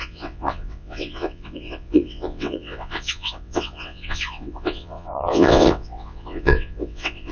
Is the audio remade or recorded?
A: remade